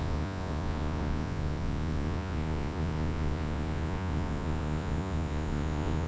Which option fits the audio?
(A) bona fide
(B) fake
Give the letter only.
B